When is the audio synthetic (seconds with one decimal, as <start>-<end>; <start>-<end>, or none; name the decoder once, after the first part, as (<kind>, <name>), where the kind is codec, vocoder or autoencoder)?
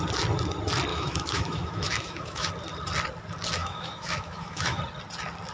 0.9-2.5 (autoencoder, DAC-VAE); 3.6-4.8